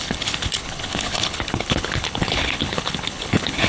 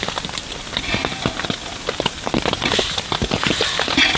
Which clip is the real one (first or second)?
second